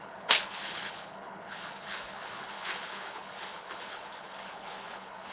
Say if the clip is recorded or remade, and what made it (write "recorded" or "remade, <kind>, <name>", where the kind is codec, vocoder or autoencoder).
remade, codec, HILCodec